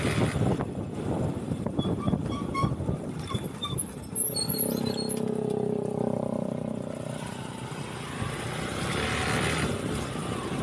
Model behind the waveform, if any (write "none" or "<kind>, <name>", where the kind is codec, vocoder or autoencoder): none